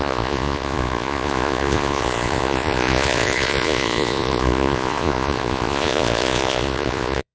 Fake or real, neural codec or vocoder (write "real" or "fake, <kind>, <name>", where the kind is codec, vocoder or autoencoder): fake, vocoder, Vocos